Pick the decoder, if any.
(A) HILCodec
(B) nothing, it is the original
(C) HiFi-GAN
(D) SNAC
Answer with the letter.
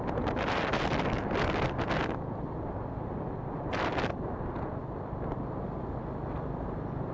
B